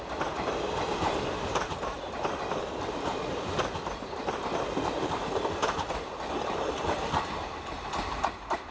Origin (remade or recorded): recorded